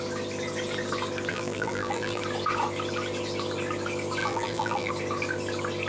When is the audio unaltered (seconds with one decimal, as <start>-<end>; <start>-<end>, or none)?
0.0-1.3; 2.2-4.2; 4.9-5.9